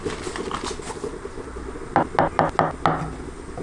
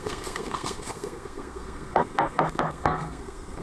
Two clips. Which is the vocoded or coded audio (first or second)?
second